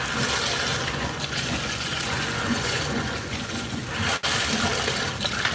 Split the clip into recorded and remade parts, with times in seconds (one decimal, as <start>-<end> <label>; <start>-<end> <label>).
0.0-0.7 recorded; 0.7-3.8 remade; 3.8-5.5 recorded